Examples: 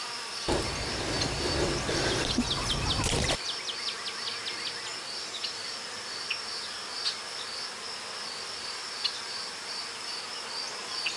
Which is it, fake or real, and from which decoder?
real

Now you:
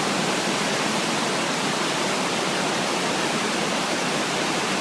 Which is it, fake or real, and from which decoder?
fake, vocoder, BigVGAN v2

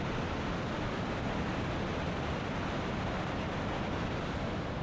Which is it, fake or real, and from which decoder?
real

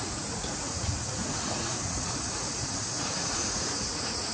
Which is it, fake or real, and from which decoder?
fake, vocoder, Vocos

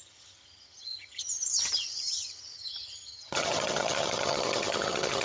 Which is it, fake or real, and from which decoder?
fake, vocoder, HiFi-GAN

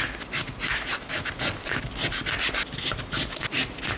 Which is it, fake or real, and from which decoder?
real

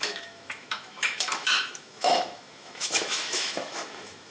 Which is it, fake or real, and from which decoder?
fake, autoencoder, DAC-VAE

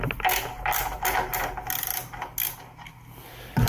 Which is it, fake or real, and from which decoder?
real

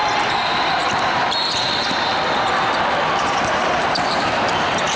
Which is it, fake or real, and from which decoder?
fake, vocoder, BigVGAN v2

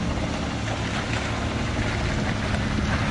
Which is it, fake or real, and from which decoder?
real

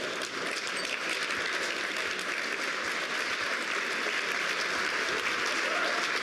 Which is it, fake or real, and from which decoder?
real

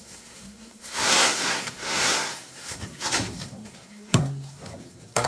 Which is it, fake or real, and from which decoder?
fake, codec, SNAC